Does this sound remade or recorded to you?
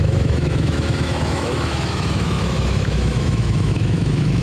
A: remade